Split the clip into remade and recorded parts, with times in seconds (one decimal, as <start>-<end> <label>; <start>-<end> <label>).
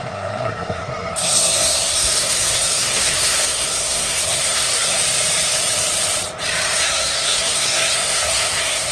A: 0.0-5.0 remade; 5.0-6.8 recorded; 6.8-8.9 remade